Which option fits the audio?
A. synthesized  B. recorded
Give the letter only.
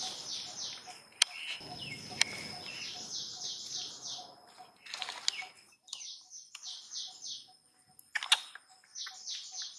B